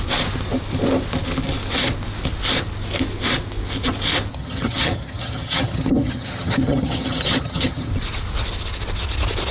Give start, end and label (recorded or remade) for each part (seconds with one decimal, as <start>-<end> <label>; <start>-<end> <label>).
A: 0.0-4.3 recorded; 4.3-7.9 remade; 7.9-9.5 recorded